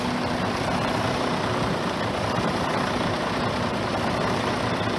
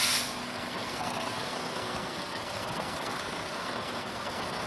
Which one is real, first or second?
first